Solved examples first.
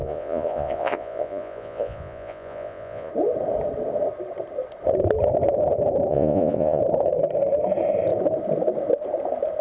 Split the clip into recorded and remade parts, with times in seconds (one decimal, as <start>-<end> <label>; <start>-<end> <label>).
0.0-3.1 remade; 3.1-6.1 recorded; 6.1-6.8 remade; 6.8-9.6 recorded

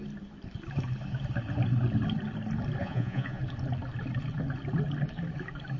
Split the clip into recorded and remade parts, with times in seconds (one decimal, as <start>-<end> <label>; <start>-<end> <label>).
0.0-2.8 recorded; 2.8-3.4 remade; 3.4-5.8 recorded

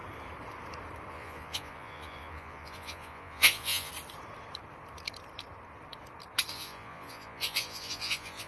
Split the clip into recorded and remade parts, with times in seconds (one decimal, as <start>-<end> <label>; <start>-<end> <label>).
0.0-1.1 recorded; 1.1-3.9 remade; 3.9-6.5 recorded; 6.5-8.5 remade

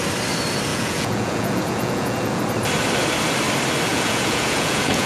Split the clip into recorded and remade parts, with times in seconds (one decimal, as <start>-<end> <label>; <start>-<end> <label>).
0.0-0.7 recorded; 0.7-2.4 remade; 2.4-3.9 recorded; 3.9-5.1 remade

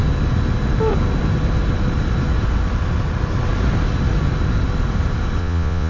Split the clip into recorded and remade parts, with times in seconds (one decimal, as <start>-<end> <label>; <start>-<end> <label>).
0.0-5.4 recorded; 5.4-5.9 remade